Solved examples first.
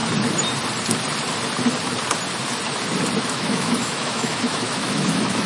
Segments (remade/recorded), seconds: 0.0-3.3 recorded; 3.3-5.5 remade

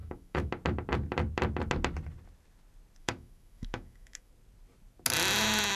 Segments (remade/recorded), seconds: 0.0-0.5 remade; 0.5-3.0 recorded; 3.0-4.3 remade; 4.3-5.8 recorded